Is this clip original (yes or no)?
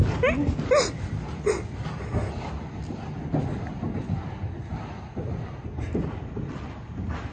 yes